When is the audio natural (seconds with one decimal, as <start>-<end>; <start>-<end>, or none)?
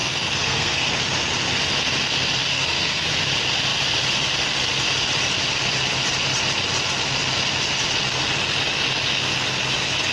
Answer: 0.9-2.5; 3.1-10.1